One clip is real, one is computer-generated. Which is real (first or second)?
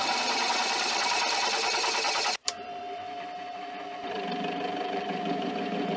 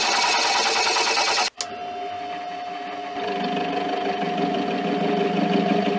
second